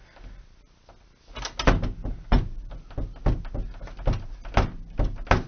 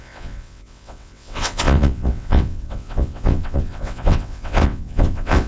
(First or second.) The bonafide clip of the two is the first